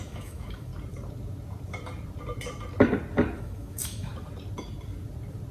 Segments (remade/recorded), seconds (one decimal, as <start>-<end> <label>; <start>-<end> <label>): 0.0-0.7 remade; 0.7-3.4 recorded; 3.4-4.1 remade; 4.1-5.5 recorded